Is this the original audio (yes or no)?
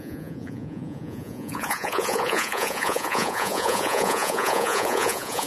no